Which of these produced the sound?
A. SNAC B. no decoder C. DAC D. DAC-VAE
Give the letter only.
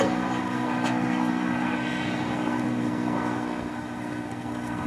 A